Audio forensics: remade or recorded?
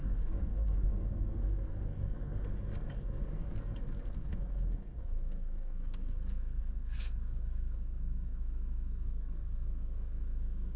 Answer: remade